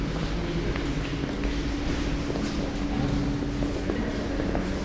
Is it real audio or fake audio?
real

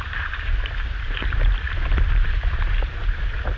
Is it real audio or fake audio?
real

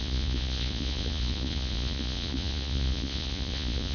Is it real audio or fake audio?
fake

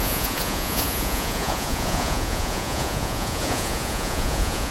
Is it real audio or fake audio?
fake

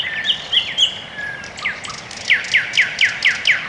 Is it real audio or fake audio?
real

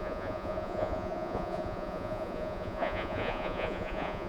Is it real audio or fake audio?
fake